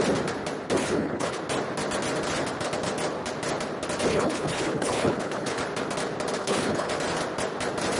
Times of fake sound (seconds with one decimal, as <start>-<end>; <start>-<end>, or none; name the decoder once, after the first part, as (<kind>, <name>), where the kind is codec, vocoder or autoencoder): 0.8-1.4 (codec, HILCodec); 4.1-5.6; 6.4-6.9